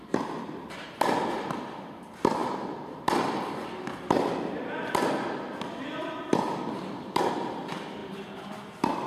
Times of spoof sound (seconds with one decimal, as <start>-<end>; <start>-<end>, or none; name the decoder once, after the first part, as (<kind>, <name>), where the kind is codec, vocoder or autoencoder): none